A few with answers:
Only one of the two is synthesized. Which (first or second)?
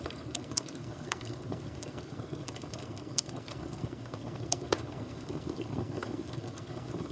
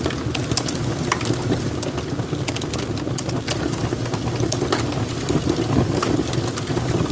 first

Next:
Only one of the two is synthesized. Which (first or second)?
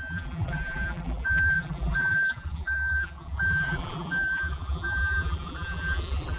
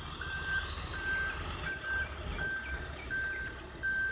first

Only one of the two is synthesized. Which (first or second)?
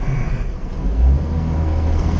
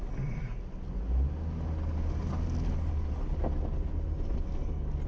first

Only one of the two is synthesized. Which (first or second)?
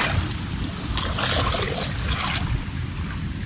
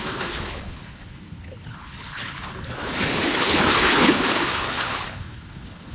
second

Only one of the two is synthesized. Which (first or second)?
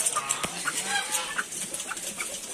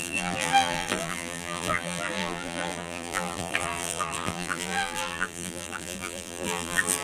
second